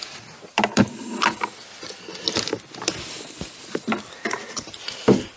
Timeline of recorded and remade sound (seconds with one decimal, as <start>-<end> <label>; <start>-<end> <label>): 0.0-5.4 recorded